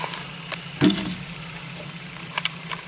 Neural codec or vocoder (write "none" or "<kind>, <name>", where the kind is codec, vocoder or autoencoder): vocoder, BigVGAN v2